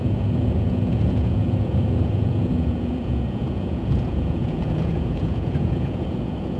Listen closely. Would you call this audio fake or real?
fake